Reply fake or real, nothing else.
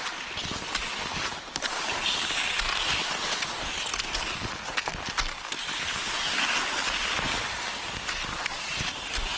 real